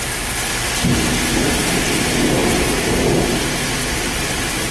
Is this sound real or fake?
real